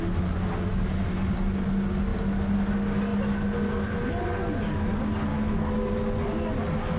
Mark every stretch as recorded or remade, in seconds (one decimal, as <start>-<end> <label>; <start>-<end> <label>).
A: 0.0-5.3 recorded; 5.3-5.9 remade; 5.9-7.0 recorded